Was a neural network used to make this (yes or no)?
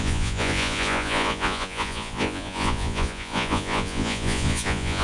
yes